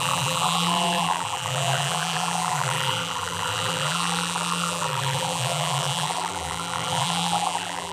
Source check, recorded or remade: remade